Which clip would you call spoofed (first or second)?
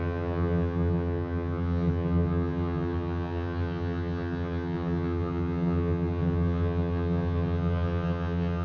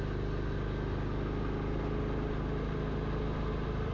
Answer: first